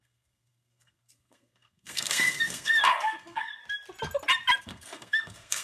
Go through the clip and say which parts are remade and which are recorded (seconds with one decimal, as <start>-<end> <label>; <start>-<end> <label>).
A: 0.0-3.6 remade; 3.6-4.6 recorded; 4.6-5.6 remade